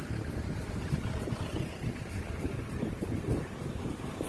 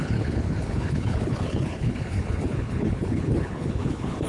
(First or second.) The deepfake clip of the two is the second